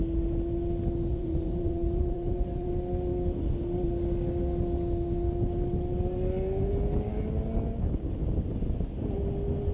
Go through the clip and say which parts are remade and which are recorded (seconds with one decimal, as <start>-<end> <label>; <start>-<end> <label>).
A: 0.0-1.1 recorded; 1.1-2.7 remade; 2.7-9.7 recorded